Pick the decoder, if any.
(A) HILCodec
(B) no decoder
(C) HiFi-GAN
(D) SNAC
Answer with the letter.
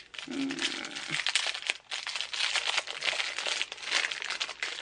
B